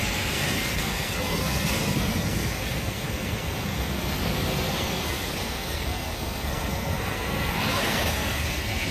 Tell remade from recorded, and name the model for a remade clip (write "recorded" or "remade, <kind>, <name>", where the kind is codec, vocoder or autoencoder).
remade, codec, SNAC